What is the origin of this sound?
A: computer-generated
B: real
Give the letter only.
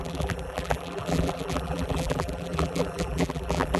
A